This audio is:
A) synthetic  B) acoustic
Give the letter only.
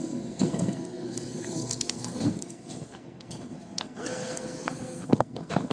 A